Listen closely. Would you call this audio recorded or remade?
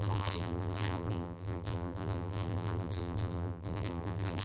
remade